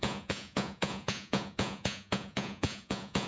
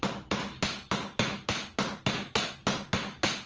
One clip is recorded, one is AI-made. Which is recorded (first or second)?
second